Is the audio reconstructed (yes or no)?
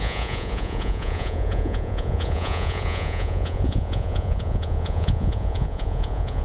yes